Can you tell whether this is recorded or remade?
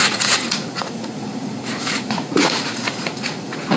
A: remade